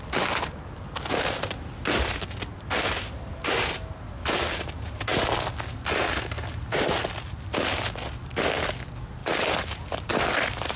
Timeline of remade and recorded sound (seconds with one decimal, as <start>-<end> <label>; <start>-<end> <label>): 0.0-2.5 recorded; 2.5-3.4 remade; 3.4-9.2 recorded; 9.2-10.8 remade